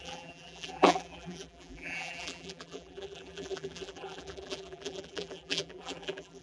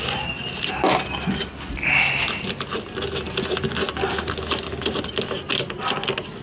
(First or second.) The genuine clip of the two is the second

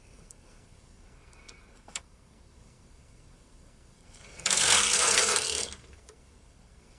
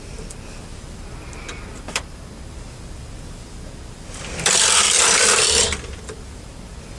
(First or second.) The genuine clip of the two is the second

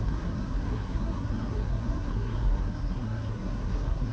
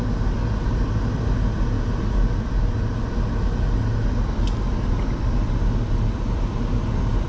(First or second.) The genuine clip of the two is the second